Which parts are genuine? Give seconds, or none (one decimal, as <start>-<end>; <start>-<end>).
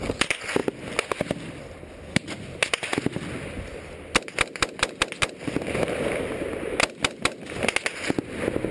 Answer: 0.0-8.7